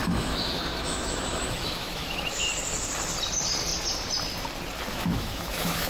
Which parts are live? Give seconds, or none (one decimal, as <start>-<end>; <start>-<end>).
2.5-4.9